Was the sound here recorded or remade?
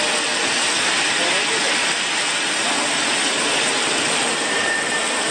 recorded